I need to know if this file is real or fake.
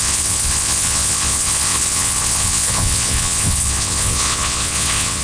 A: fake